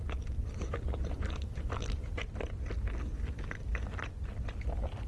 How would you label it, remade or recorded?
recorded